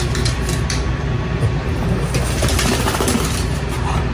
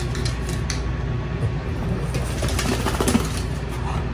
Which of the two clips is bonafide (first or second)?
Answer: second